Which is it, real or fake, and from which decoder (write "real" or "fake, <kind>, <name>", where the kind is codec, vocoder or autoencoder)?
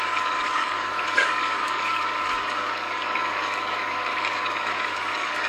fake, codec, DAC